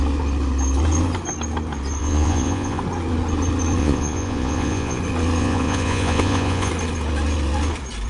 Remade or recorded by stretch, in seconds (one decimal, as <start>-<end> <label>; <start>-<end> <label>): 0.0-2.0 recorded; 2.0-2.8 remade; 2.8-3.8 recorded; 3.8-5.0 remade; 5.0-5.4 recorded; 5.4-6.7 remade; 6.7-8.1 recorded